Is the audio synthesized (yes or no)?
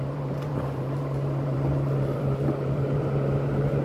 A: yes